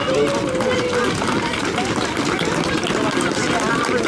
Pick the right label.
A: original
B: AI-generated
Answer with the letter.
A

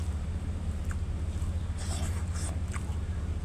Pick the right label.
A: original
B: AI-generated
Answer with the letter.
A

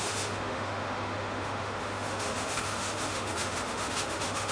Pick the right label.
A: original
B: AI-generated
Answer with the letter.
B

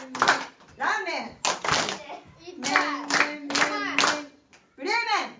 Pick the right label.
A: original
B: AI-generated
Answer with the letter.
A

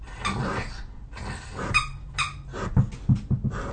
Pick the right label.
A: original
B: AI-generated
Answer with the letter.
A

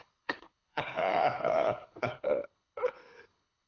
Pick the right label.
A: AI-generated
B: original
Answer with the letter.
A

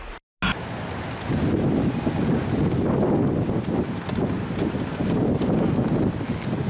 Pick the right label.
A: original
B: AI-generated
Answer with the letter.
A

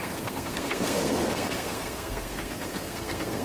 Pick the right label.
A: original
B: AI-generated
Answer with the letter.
B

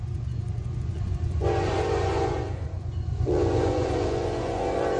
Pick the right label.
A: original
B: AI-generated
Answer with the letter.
B